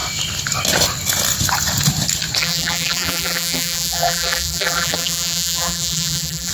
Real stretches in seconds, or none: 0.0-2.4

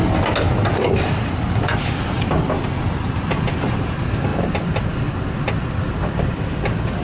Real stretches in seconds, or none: 0.0-7.0